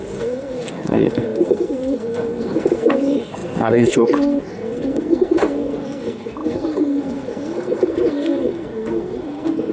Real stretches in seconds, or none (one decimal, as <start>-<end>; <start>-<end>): none